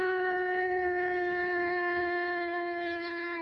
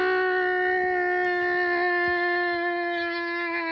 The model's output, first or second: first